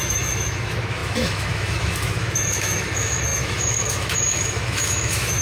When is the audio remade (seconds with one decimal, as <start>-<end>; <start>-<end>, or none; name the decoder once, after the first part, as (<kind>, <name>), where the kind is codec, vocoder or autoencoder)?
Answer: 0.0-5.4 (autoencoder, DAC-VAE)